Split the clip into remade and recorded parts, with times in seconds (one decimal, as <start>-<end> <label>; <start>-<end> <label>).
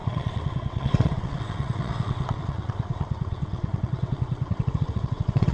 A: 0.0-5.5 remade